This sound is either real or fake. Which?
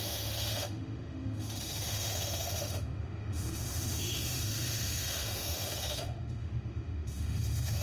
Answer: fake